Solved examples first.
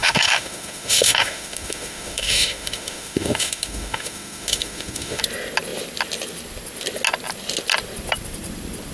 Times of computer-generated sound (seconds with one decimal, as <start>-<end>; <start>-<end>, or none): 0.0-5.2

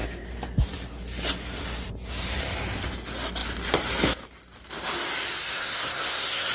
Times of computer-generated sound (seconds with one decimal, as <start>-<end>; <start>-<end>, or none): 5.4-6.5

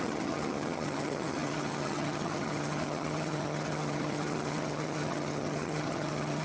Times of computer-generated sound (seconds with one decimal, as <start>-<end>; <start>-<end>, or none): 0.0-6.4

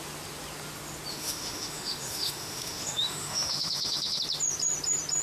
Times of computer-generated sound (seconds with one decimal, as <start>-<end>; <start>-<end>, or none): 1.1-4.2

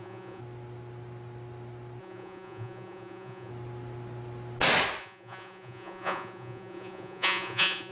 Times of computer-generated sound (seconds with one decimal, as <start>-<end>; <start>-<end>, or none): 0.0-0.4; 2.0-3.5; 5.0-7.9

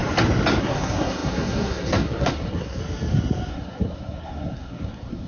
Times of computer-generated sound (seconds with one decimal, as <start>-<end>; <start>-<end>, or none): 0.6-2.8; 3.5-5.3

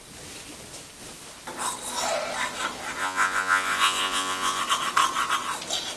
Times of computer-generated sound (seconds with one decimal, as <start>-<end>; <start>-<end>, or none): 3.0-4.6